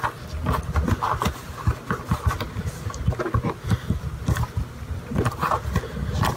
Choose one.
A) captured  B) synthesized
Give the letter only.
A